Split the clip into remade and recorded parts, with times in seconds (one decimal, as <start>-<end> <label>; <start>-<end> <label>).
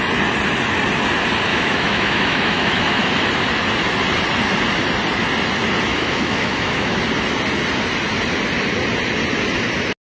0.0-1.5 recorded; 1.5-3.1 remade; 3.1-5.9 recorded; 5.9-7.0 remade; 7.0-10.0 recorded